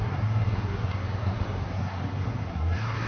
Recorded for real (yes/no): no